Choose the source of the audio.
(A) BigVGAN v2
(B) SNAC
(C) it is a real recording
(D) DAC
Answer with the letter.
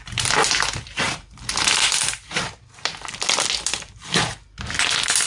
C